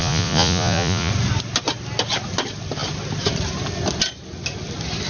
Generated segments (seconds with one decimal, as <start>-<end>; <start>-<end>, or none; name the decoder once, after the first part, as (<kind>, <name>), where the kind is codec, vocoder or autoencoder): 0.0-1.1 (vocoder, Vocos)